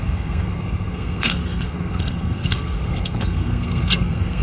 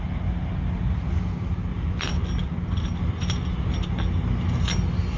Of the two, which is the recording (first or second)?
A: second